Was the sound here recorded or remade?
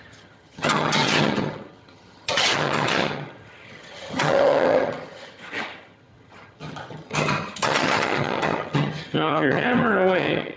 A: remade